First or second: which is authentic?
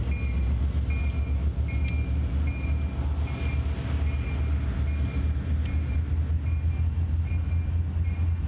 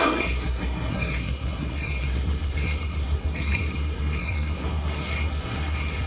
first